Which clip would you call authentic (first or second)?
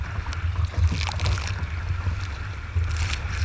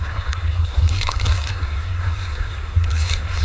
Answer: first